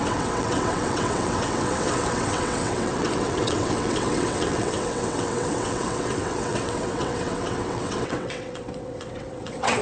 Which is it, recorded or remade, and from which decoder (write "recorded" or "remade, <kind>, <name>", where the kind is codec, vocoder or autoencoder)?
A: remade, vocoder, WaveNeXt